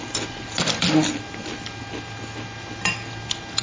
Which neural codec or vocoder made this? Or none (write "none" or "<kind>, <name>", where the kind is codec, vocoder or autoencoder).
none